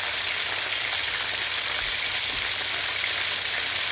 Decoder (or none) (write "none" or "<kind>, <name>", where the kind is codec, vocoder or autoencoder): none